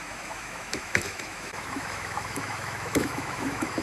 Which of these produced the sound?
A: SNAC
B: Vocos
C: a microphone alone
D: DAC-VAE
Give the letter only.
D